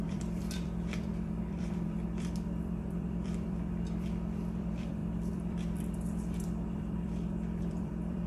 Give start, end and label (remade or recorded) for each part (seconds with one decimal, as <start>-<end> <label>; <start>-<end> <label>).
0.0-8.3 remade